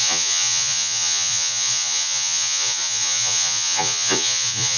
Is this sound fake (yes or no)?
yes